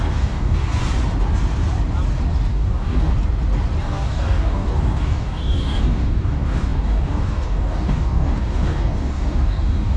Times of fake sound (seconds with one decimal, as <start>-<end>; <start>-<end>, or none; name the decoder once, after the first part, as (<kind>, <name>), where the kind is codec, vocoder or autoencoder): 0.0-0.8 (codec, DAC); 2.5-3.1; 3.8-10.0